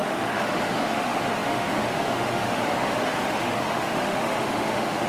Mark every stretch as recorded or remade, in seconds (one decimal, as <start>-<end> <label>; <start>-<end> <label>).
0.0-5.1 remade